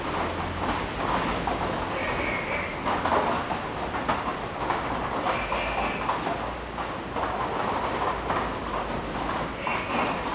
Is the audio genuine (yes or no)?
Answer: yes